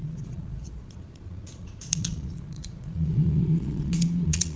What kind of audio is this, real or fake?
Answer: fake